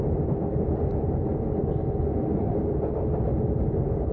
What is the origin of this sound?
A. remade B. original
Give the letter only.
B